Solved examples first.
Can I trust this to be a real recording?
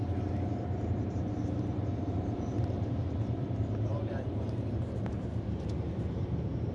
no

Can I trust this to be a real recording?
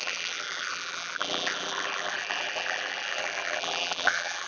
no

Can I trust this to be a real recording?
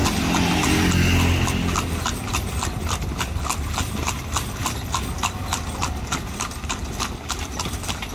yes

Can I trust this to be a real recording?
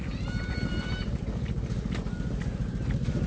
yes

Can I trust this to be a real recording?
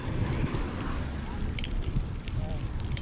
no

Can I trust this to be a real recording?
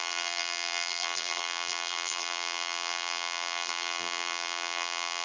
no